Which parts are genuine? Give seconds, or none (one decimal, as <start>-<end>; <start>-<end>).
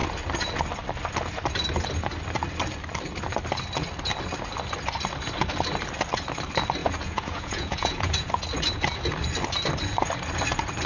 0.0-6.8; 8.3-10.9